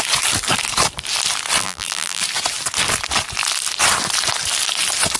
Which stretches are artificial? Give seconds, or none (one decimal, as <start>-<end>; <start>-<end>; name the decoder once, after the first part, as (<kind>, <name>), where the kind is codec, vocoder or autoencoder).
1.6-2.2 (vocoder, BigVGAN v2)